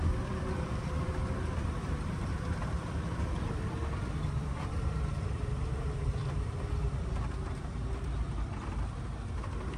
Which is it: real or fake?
fake